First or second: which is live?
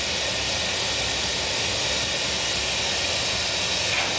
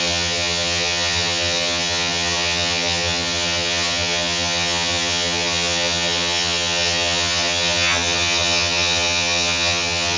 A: first